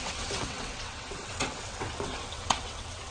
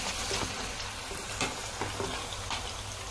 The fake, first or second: first